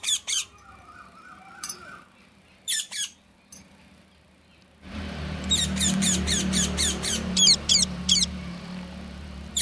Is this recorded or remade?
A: remade